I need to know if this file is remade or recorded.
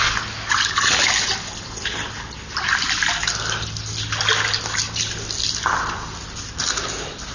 recorded